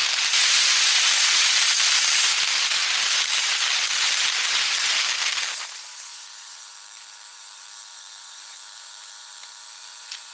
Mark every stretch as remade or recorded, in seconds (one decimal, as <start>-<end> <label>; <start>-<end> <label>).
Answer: 0.0-10.3 remade